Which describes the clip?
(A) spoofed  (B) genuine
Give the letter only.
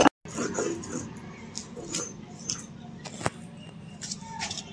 B